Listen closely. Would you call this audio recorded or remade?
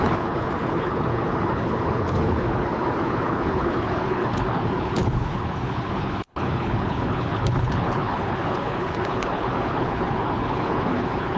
remade